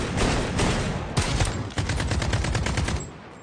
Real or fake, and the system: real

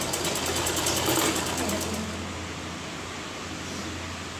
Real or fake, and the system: real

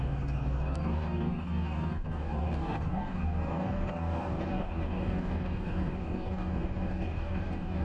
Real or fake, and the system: fake, codec, DAC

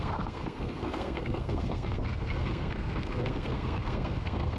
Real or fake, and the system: fake, codec, SNAC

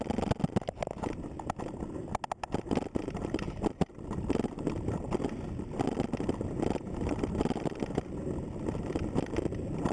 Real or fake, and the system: real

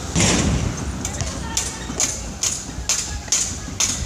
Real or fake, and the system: real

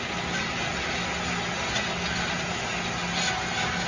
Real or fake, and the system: real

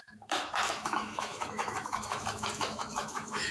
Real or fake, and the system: fake, autoencoder, DAC-VAE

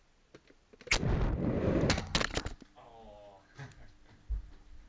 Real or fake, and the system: real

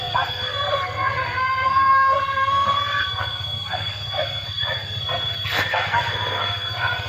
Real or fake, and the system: fake, codec, SNAC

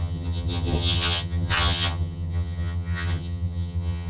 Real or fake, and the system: fake, vocoder, HiFi-GAN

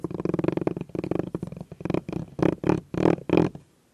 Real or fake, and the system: real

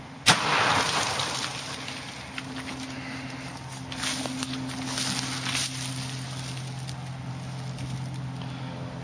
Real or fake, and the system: real